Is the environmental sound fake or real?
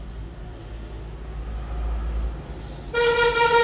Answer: real